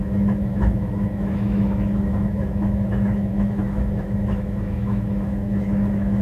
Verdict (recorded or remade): remade